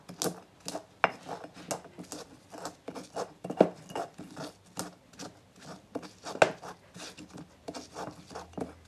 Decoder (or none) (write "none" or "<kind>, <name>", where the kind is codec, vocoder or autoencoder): none